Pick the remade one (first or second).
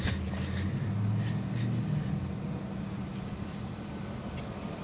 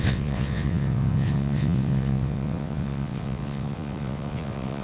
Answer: second